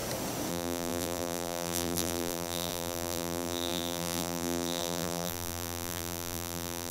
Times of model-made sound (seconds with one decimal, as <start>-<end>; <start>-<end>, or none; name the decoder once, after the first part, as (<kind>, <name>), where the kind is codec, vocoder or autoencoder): 0.5-6.9 (vocoder, BigVGAN v2)